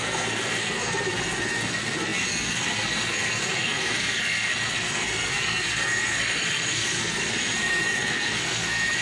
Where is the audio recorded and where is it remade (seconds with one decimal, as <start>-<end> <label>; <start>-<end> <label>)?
0.0-9.0 remade

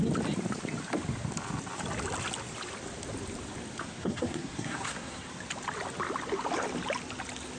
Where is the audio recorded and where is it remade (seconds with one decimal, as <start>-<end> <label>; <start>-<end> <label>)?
0.0-3.8 recorded; 3.8-5.3 remade; 5.3-7.6 recorded

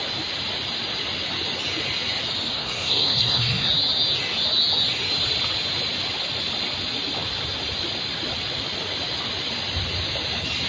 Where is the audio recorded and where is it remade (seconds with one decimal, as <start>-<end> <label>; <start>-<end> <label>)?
0.0-2.5 recorded; 2.5-3.7 remade; 3.7-10.7 recorded

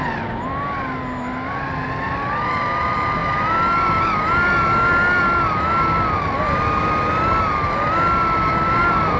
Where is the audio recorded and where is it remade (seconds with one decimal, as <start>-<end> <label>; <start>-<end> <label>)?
0.0-9.2 recorded